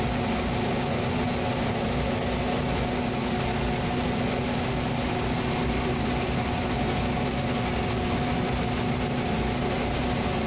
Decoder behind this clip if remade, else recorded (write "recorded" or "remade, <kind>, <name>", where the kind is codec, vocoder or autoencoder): recorded